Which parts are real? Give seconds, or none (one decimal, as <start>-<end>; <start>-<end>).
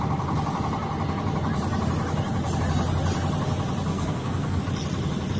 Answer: 0.0-3.9; 4.6-5.4